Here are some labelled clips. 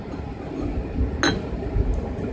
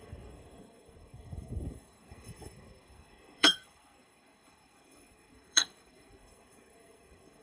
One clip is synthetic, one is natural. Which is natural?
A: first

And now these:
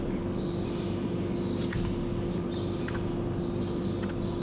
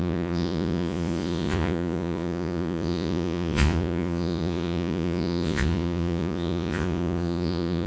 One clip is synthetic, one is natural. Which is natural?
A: first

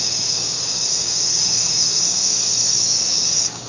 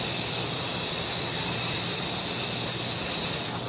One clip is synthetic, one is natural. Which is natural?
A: second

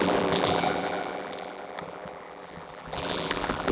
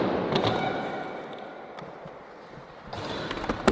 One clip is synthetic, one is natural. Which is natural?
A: second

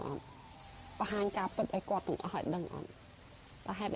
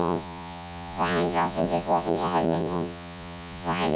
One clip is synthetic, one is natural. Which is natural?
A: first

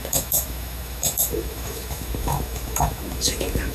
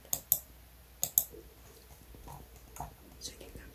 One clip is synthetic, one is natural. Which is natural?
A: second